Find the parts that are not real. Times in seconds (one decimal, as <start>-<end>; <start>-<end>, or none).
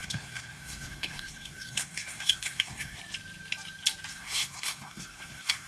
0.0-3.0; 4.1-5.7